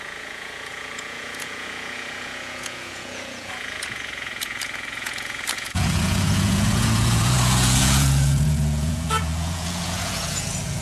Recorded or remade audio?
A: remade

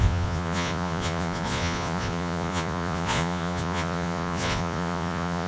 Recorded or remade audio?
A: remade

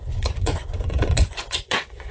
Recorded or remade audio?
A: remade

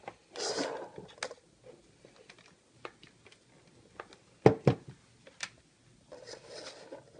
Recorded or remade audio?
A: recorded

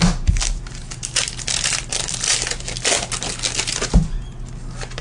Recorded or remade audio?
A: recorded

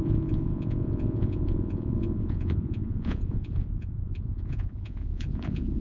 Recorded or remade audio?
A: remade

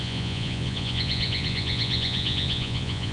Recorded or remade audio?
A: remade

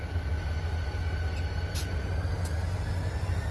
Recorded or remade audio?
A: recorded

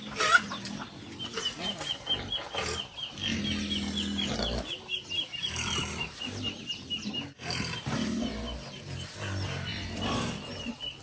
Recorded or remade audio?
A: recorded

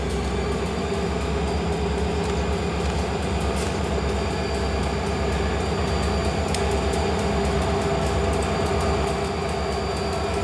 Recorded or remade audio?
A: recorded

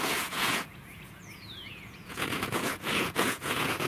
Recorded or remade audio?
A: remade